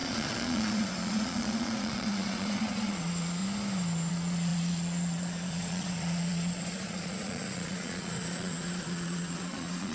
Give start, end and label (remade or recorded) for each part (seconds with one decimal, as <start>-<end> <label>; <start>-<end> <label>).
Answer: 0.0-3.4 remade; 3.4-4.1 recorded; 4.1-9.9 remade

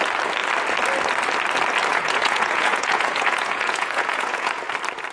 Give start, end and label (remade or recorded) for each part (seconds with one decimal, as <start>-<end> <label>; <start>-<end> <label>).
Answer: 0.0-1.9 recorded; 1.9-4.6 remade; 4.6-5.1 recorded

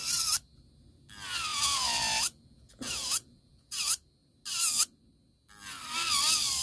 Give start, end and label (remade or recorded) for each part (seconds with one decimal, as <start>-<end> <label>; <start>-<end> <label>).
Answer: 0.0-1.5 recorded; 1.5-3.8 remade; 3.8-6.6 recorded

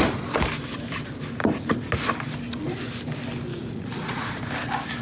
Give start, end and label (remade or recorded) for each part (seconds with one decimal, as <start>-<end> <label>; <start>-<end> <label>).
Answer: 0.0-3.5 recorded; 3.5-4.4 remade; 4.4-5.0 recorded